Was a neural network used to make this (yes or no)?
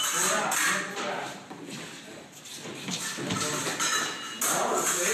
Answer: no